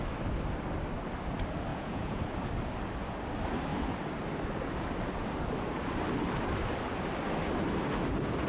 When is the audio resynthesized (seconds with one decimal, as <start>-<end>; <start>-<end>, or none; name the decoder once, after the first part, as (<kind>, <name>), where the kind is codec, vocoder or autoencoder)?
1.7-2.2 (vocoder, Vocos)